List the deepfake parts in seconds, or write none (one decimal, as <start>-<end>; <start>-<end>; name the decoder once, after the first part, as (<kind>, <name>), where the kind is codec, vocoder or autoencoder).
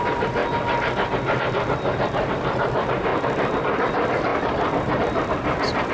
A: 0.0-0.4 (vocoder, BigVGAN v2); 1.4-3.1; 3.6-4.3; 4.9-5.9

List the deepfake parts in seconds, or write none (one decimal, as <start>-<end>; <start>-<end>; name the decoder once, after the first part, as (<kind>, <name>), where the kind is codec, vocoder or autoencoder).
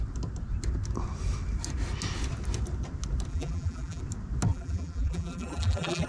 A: 3.3-4.0 (vocoder, BigVGAN v2); 4.5-6.1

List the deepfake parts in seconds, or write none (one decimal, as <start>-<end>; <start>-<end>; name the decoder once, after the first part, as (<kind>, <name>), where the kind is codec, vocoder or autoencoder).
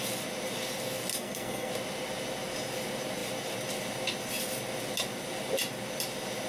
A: 1.1-1.7 (codec, SNAC)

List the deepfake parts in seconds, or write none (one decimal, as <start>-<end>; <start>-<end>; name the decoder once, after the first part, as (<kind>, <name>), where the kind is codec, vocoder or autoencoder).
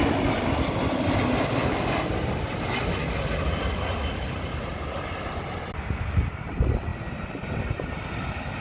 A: none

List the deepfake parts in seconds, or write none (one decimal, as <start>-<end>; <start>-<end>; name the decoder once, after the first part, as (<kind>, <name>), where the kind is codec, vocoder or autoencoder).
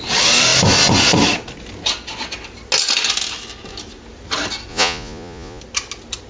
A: 4.7-5.6 (vocoder, Vocos)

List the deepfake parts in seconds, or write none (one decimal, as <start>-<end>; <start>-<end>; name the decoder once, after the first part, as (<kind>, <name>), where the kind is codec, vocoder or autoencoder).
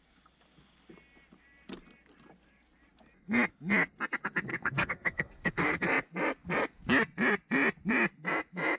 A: 4.5-5.8 (codec, SNAC)